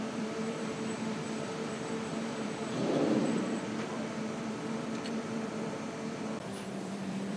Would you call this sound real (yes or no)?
no